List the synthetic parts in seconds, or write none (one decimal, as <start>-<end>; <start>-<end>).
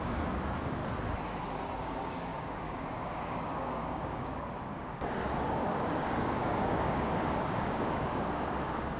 0.0-0.8; 1.8-9.0